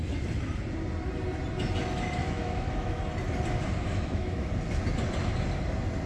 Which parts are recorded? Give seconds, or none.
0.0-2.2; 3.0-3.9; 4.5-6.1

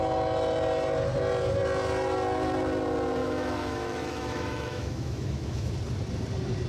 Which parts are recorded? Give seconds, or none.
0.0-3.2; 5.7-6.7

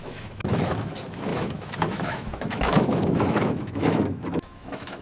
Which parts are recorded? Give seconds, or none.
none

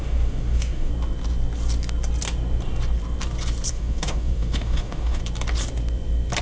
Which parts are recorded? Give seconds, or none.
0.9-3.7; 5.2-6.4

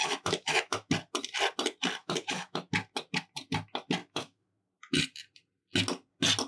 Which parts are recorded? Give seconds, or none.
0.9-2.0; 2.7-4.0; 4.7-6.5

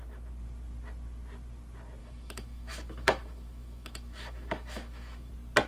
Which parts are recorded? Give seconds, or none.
0.0-2.0; 5.3-5.7